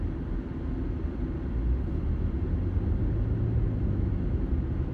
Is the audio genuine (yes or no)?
yes